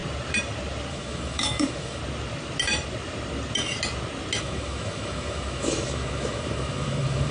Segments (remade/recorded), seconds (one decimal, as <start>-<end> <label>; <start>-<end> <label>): 0.0-0.9 recorded; 0.9-2.0 remade; 2.0-4.4 recorded; 4.4-7.3 remade